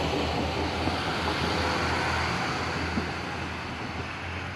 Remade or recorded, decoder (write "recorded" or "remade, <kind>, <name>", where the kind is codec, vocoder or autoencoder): recorded